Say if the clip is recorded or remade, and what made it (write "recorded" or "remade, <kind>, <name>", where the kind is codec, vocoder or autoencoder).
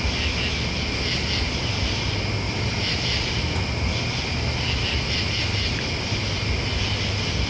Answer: recorded